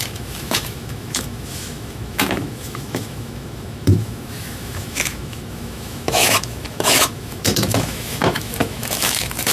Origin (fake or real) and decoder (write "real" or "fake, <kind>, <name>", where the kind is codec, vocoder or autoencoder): fake, autoencoder, DAC-VAE